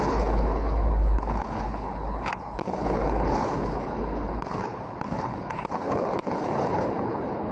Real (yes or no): no